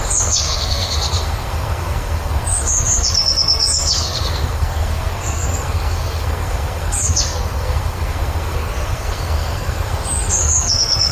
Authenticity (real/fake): fake